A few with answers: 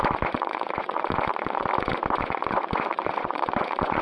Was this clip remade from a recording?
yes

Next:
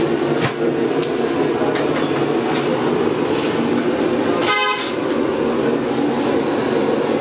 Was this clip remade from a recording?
no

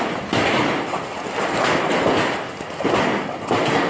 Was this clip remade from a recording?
no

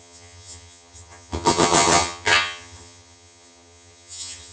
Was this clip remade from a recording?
yes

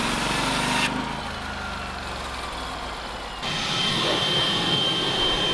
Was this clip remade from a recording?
no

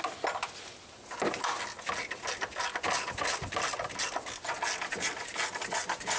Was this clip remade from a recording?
no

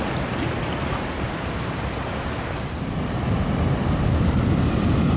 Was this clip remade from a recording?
no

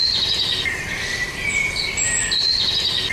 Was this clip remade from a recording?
no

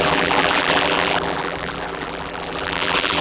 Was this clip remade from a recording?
yes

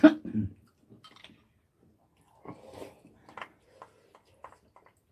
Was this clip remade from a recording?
no